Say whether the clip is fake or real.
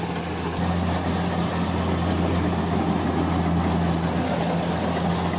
real